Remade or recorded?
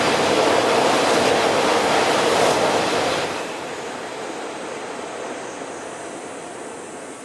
recorded